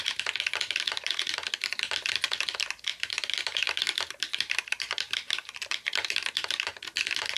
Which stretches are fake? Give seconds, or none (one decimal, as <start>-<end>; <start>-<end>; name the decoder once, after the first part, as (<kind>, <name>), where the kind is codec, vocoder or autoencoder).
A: 2.9-6.7 (vocoder, BigVGAN v2)